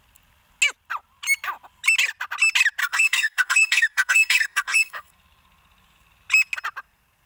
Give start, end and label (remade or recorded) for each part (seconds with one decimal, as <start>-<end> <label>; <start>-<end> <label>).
0.0-2.8 recorded; 2.8-5.1 remade; 5.1-7.3 recorded